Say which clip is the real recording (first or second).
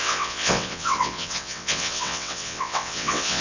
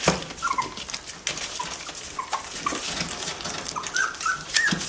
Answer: second